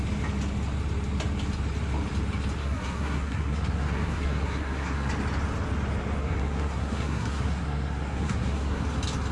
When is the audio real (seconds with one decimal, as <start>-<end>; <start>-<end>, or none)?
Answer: 0.0-2.6; 5.1-6.2; 8.8-9.3